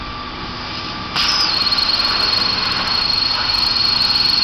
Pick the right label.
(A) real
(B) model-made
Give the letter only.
A